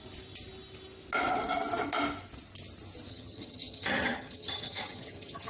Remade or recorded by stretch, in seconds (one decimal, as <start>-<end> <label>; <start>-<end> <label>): 0.0-3.1 recorded; 3.1-5.5 remade